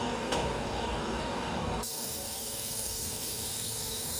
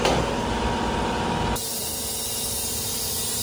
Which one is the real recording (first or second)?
second